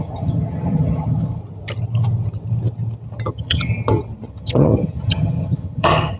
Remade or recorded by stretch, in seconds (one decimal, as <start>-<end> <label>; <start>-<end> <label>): 0.0-1.4 remade; 1.4-3.3 recorded; 3.3-3.7 remade; 3.7-4.3 recorded; 4.3-6.2 remade